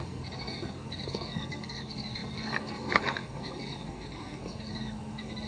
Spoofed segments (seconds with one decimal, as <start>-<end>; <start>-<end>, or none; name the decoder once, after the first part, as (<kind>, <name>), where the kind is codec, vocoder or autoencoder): 0.0-5.5 (codec, SNAC)